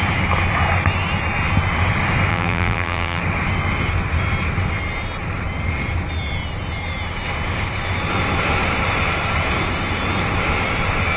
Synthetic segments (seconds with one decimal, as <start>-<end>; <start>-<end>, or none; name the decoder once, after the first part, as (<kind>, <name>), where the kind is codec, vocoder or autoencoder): 2.3-3.2 (vocoder, BigVGAN v2)